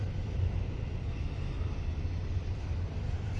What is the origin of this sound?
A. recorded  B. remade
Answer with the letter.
A